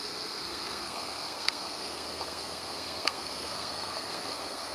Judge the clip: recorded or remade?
remade